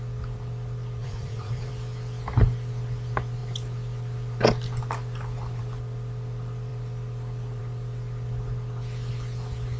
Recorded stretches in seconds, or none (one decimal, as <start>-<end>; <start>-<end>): 0.0-1.0; 1.7-9.8